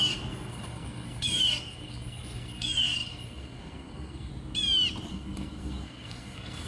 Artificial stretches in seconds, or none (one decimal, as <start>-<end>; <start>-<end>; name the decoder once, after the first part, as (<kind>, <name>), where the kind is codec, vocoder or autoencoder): 0.0-4.3 (codec, SNAC); 5.1-6.7